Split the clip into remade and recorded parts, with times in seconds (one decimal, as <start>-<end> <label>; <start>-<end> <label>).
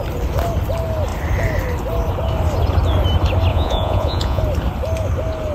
0.0-3.5 recorded; 3.5-4.4 remade; 4.4-5.5 recorded